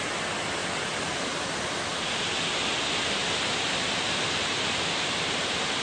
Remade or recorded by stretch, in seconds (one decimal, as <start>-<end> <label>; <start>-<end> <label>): 0.0-5.8 recorded